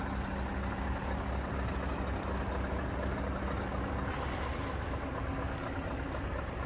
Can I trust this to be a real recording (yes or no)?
yes